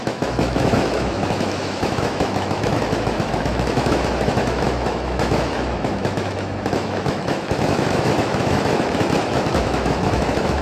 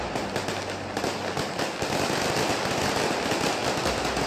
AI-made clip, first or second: first